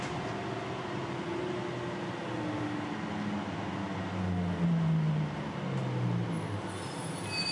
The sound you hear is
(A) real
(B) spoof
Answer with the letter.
A